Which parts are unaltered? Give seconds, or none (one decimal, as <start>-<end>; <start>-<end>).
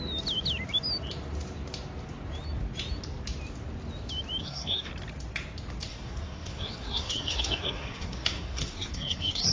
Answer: 0.0-4.4; 4.9-5.9